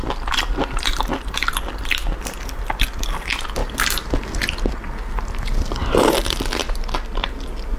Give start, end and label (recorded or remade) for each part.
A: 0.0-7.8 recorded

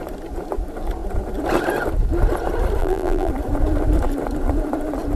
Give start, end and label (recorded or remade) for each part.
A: 0.0-2.8 recorded; 2.8-3.3 remade; 3.3-5.2 recorded

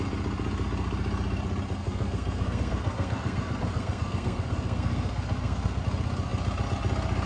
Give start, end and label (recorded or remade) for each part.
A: 0.0-1.8 recorded; 1.8-5.8 remade; 5.8-7.3 recorded

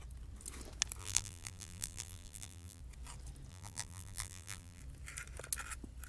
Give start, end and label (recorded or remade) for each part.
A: 0.0-1.0 recorded; 1.0-2.8 remade; 2.8-3.5 recorded; 3.5-4.8 remade; 4.8-6.1 recorded

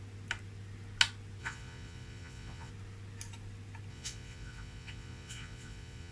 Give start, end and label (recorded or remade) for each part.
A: 0.0-1.4 recorded; 1.4-2.7 remade; 2.7-3.9 recorded; 3.9-6.1 remade

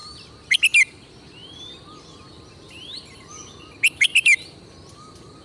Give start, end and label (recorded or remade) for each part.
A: 0.0-5.4 recorded